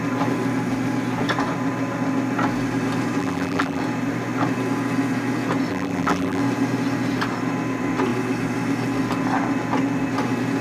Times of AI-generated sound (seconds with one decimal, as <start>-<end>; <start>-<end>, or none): 3.2-3.8; 5.7-6.4